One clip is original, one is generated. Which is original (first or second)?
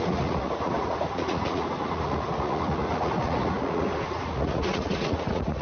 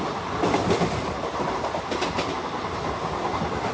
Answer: second